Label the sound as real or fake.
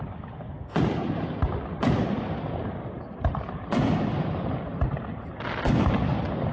real